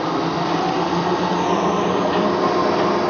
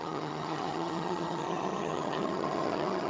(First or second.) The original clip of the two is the first